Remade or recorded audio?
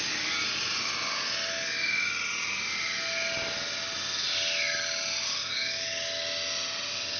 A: recorded